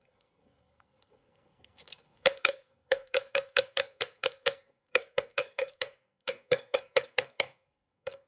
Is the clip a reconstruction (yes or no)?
yes